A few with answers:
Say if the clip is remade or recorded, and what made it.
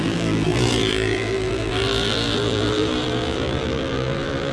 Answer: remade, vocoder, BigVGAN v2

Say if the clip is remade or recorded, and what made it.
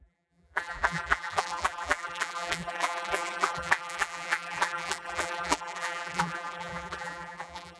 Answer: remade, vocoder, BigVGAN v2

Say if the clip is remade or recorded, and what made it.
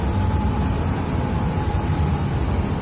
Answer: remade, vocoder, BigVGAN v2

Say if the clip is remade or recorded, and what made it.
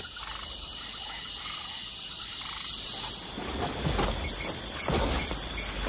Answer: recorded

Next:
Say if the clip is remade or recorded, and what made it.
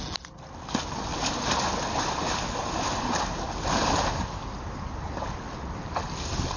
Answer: recorded